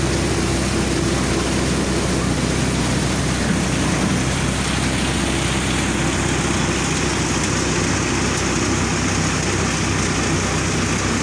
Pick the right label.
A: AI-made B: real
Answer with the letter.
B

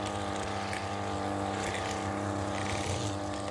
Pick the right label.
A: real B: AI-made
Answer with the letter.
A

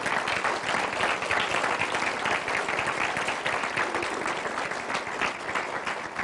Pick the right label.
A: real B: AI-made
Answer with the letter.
A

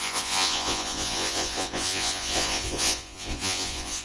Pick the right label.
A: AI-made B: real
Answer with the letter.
A